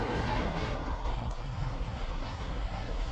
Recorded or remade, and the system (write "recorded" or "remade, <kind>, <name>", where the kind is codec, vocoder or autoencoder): remade, codec, SNAC